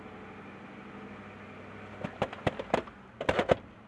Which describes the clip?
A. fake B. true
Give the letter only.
B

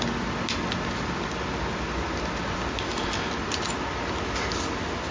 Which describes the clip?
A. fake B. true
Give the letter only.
B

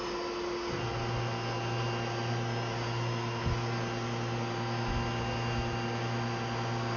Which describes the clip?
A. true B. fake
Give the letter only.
A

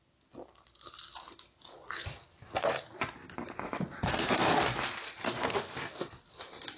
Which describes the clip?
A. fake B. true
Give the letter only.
B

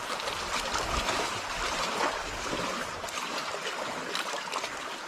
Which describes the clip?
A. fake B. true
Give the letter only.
B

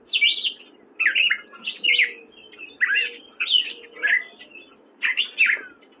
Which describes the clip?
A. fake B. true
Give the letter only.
B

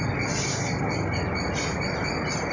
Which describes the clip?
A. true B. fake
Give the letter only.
A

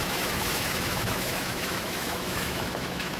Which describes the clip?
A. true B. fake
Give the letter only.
B